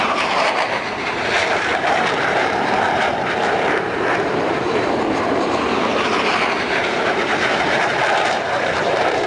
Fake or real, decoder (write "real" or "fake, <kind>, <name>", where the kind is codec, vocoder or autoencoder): fake, vocoder, BigVGAN v2